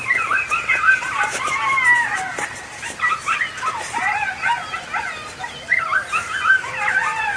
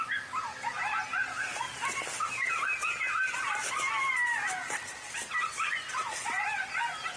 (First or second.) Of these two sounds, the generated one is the first